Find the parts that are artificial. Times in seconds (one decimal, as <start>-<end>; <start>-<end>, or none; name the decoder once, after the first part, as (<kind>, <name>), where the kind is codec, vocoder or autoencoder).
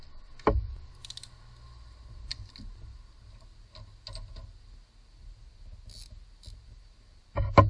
none